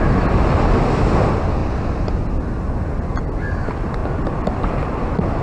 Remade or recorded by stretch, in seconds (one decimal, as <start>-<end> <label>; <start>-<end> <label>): 0.0-5.4 recorded